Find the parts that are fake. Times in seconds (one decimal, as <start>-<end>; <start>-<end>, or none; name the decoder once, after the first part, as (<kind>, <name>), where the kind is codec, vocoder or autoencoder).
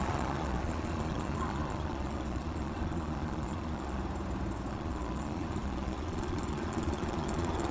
0.0-4.0 (vocoder, Vocos); 4.7-7.7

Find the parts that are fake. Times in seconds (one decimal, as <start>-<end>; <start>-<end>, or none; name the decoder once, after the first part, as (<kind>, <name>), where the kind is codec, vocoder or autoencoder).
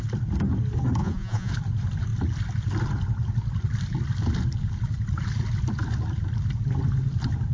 1.0-1.5 (vocoder, Vocos)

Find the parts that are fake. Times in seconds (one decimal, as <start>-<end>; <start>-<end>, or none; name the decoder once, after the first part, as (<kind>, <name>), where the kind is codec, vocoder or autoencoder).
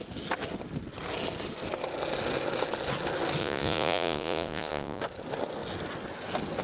3.4-5.0 (vocoder, Vocos)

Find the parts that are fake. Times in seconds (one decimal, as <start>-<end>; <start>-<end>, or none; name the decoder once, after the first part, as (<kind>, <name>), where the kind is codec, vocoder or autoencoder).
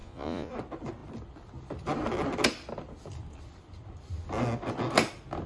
0.0-0.5 (vocoder, Vocos)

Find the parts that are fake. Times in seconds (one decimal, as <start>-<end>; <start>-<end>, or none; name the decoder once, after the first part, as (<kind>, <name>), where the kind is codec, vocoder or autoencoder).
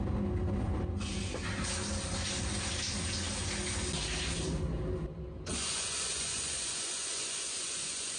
5.5-8.2 (vocoder, Vocos)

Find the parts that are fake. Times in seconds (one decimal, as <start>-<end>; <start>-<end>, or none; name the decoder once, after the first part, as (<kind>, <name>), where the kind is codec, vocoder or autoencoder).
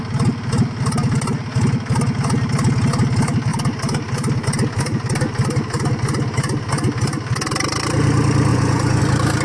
8.5-9.0 (vocoder, Vocos)